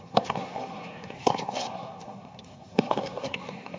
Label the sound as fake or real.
fake